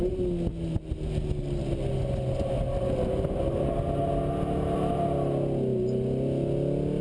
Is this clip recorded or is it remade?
recorded